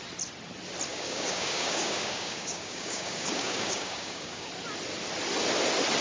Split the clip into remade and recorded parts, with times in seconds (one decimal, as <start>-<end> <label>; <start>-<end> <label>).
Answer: 0.0-0.9 recorded; 0.9-4.5 remade; 4.5-6.0 recorded